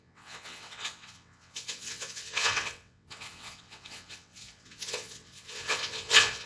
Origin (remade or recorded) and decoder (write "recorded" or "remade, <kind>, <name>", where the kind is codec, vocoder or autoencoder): remade, vocoder, WaveNeXt